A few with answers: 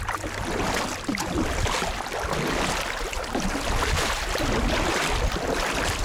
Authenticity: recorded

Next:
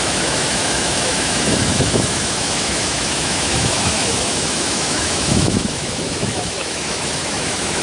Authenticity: remade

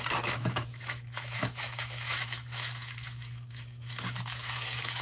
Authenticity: remade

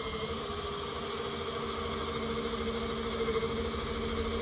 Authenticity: recorded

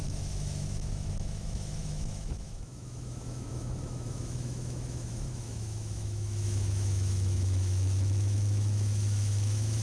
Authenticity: remade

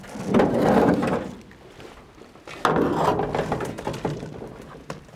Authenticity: recorded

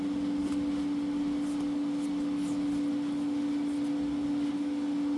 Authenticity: recorded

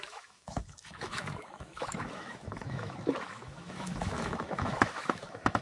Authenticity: remade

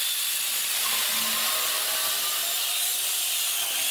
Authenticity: recorded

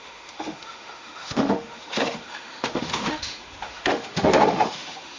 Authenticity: remade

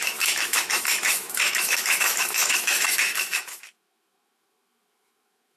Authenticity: remade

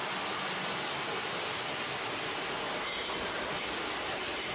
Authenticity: recorded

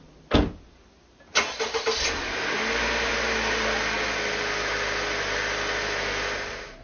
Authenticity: recorded